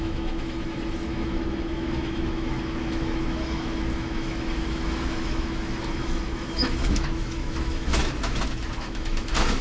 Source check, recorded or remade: remade